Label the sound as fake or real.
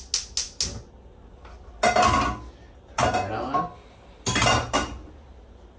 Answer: real